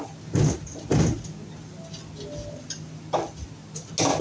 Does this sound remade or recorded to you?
recorded